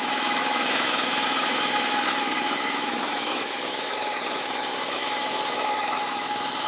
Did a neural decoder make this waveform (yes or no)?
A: yes